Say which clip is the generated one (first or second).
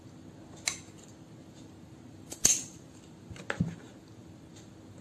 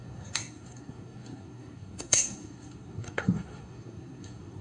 second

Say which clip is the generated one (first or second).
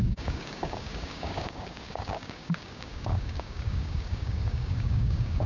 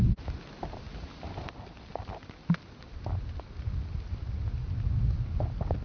first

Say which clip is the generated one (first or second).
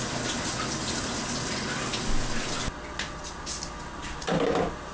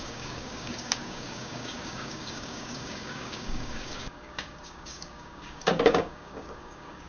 second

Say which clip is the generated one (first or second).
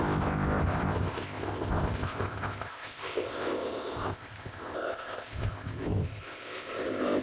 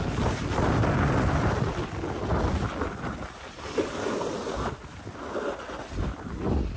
first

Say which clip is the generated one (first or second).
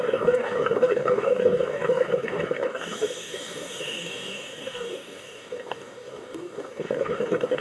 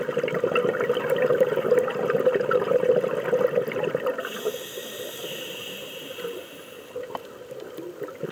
first